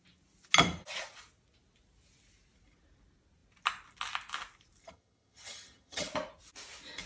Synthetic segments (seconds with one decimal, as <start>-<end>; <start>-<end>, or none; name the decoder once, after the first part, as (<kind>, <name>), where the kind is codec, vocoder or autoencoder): 4.8-6.1 (vocoder, HiFi-GAN)